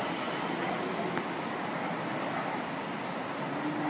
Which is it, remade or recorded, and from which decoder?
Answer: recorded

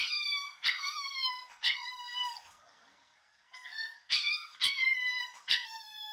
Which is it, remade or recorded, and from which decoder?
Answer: remade, codec, SNAC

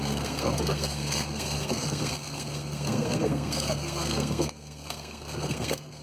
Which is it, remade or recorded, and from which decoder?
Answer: remade, codec, SNAC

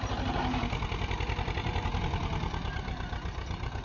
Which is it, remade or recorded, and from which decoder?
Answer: recorded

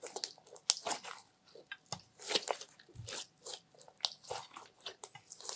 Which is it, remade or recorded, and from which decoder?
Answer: recorded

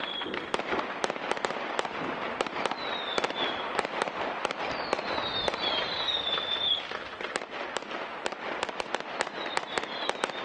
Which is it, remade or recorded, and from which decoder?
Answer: recorded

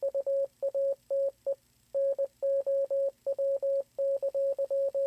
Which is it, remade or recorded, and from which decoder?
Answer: recorded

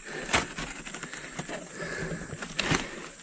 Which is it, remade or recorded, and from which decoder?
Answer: recorded